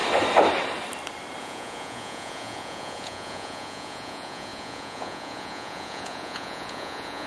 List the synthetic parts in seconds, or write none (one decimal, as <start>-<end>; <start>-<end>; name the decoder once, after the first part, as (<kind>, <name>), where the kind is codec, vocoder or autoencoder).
1.4-7.3 (vocoder, Vocos)